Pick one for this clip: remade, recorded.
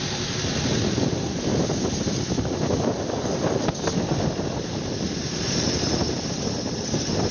recorded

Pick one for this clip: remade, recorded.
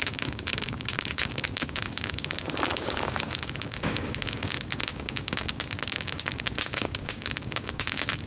remade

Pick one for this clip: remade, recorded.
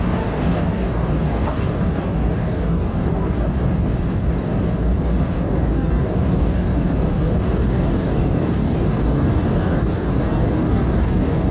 remade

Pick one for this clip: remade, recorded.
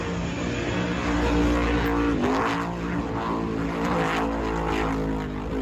recorded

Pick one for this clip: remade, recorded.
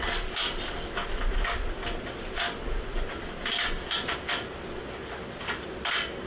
recorded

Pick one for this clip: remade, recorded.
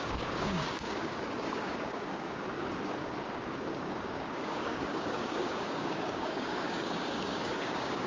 remade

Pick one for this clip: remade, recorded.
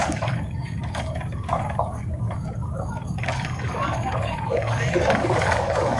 remade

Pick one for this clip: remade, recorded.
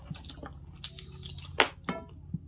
recorded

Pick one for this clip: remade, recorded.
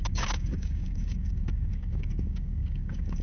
remade